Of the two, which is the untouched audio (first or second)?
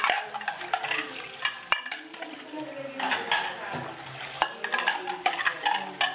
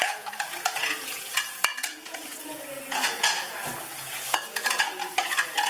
first